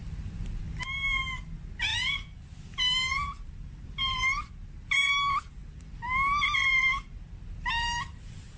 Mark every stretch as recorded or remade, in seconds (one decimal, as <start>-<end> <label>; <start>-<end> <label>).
0.0-0.6 remade; 0.6-1.9 recorded; 1.9-4.5 remade; 4.5-5.6 recorded; 5.6-8.6 remade